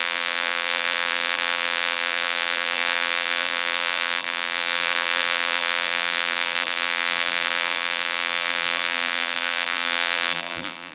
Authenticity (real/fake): fake